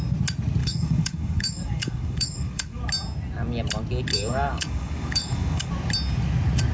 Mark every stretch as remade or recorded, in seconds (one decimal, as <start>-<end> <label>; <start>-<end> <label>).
0.0-0.6 recorded; 0.6-2.8 remade; 2.8-4.1 recorded; 4.1-5.7 remade; 5.7-6.7 recorded